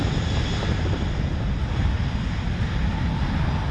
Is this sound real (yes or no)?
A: yes